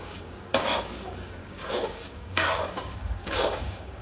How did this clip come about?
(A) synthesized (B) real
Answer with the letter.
A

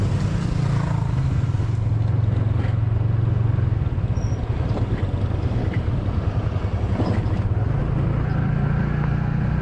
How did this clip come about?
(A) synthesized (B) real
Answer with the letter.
B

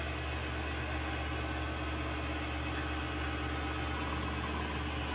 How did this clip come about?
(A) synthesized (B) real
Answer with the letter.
B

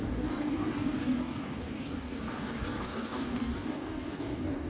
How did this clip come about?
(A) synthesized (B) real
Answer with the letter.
A